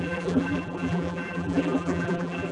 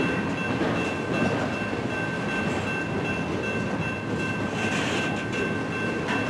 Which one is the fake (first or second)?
first